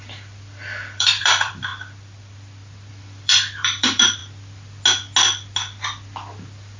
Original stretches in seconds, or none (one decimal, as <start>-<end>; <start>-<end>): 1.7-2.9; 4.2-6.8